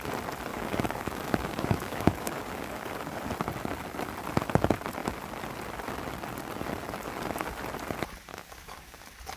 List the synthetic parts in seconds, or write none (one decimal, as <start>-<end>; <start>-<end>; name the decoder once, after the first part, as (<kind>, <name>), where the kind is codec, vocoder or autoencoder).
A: 0.5-3.2 (codec, DAC); 8.3-9.0